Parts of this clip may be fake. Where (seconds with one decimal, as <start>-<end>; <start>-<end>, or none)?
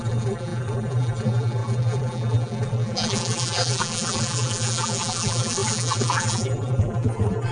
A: 0.0-7.5